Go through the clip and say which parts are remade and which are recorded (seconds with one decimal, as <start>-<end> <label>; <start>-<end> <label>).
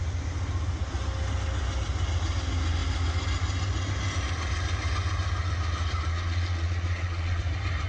0.0-6.1 recorded; 6.1-7.4 remade; 7.4-7.9 recorded